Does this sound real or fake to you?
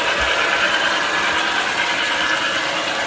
real